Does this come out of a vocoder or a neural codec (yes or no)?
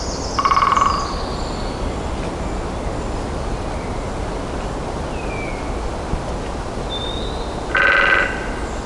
no